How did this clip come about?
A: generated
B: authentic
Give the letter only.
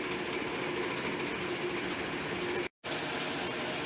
B